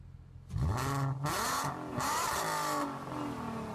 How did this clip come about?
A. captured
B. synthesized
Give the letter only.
A